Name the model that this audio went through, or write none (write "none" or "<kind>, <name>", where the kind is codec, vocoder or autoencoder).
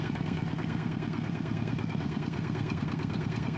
codec, SNAC